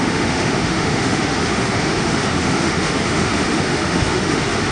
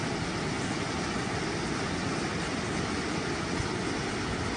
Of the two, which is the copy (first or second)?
first